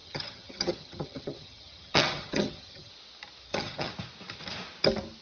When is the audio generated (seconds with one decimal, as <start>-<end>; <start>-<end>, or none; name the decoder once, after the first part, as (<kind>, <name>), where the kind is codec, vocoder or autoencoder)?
0.0-2.9 (vocoder, HiFi-GAN); 3.4-3.9